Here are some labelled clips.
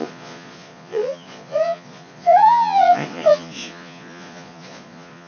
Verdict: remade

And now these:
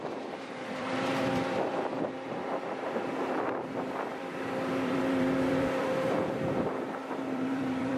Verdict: remade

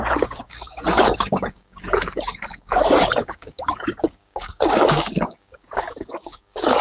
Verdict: remade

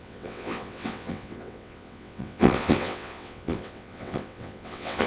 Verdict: remade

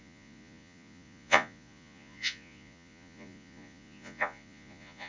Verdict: remade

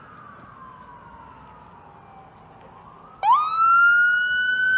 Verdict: recorded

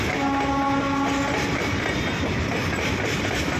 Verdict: recorded